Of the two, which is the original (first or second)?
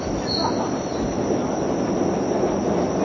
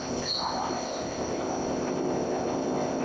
first